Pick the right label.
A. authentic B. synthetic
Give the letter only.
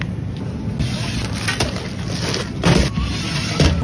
A